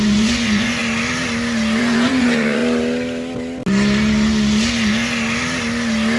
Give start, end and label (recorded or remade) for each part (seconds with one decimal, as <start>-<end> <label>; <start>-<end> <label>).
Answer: 0.0-0.8 remade; 0.8-1.8 recorded; 1.8-2.6 remade; 2.6-6.2 recorded